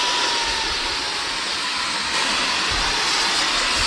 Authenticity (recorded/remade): recorded